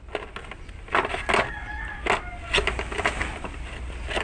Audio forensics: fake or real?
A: real